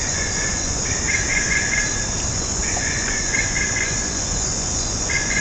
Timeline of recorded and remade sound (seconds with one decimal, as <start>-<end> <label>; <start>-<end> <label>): 0.0-0.8 remade; 0.8-1.3 recorded; 1.3-1.8 remade; 1.8-2.3 recorded; 2.3-5.4 remade